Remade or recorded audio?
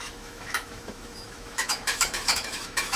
remade